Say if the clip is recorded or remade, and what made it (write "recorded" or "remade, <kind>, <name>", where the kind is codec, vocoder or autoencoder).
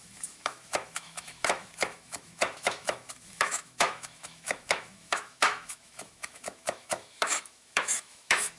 remade, autoencoder, DAC-VAE